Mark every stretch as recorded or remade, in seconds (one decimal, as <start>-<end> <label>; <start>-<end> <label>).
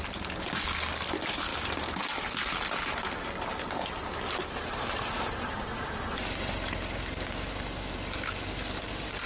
0.0-9.3 recorded